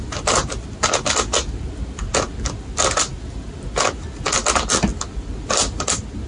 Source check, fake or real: real